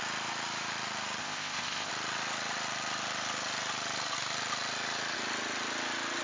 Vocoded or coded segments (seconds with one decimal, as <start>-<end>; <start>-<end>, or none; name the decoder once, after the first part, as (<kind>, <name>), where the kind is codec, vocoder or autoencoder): 1.2-1.9 (codec, ZipCodec)